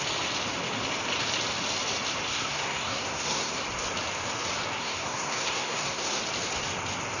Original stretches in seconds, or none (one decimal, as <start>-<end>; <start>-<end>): 0.0-2.3; 3.5-4.8; 6.2-7.2